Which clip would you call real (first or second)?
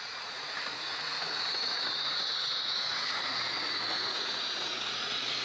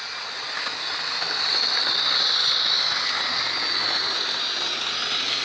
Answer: second